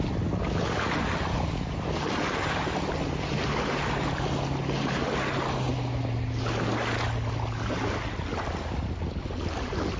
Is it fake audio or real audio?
real